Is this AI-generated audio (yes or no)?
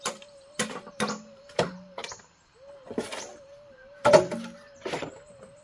yes